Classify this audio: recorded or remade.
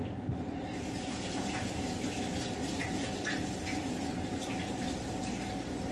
recorded